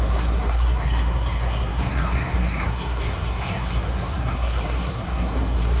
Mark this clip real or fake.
fake